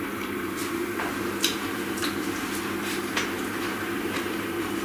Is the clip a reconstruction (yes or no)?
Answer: yes